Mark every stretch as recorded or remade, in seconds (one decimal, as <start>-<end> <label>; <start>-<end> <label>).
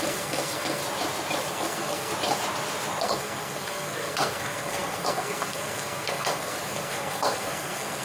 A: 0.0-0.8 remade; 0.8-1.5 recorded; 1.5-2.1 remade; 2.1-3.0 recorded; 3.0-8.0 remade